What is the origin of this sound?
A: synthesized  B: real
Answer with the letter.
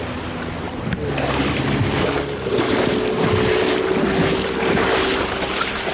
B